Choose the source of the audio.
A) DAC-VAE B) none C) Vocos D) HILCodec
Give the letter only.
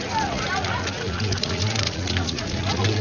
C